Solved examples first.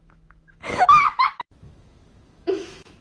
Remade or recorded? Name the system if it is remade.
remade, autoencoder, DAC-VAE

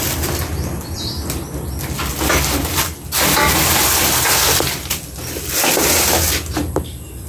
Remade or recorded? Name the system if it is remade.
recorded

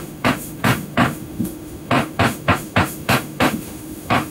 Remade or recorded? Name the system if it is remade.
remade, autoencoder, DAC-VAE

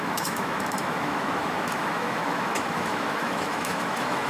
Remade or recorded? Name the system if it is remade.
remade, autoencoder, DAC-VAE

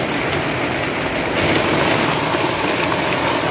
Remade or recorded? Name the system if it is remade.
recorded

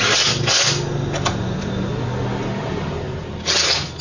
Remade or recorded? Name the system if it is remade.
recorded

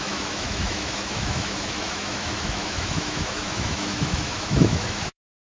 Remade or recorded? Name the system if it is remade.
remade, autoencoder, DAC-VAE